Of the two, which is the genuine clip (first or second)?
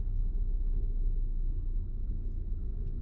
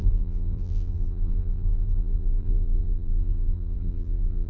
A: first